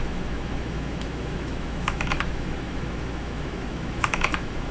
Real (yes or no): no